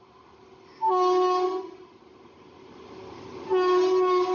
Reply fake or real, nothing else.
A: real